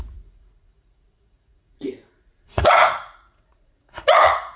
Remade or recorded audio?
remade